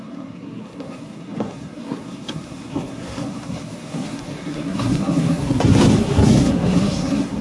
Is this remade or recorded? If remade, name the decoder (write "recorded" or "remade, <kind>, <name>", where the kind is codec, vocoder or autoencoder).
remade, codec, SNAC